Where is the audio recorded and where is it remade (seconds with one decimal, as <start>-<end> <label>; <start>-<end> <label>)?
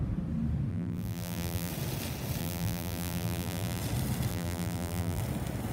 0.0-0.7 recorded; 0.7-1.7 remade; 1.7-2.4 recorded; 2.4-3.8 remade; 3.8-4.3 recorded; 4.3-5.2 remade; 5.2-5.7 recorded